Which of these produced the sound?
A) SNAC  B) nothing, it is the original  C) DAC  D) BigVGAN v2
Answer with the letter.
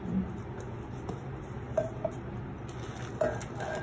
B